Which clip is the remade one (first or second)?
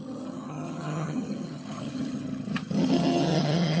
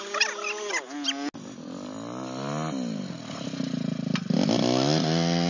first